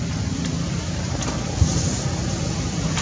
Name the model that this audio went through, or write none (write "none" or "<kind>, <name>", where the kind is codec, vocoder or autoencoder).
none